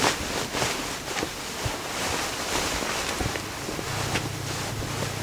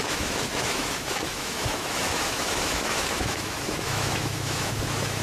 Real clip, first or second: first